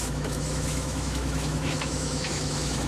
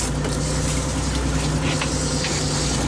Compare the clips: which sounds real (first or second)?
second